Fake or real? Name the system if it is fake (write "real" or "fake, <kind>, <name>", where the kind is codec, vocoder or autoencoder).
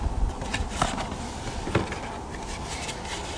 real